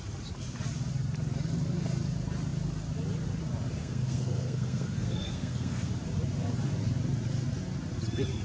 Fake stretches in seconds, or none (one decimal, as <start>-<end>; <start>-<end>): 3.8-5.9